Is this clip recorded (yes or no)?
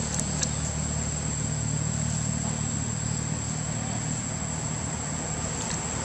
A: yes